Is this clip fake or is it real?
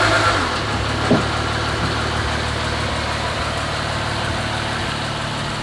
real